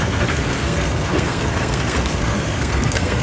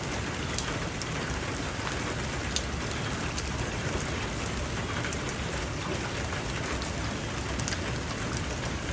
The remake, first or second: first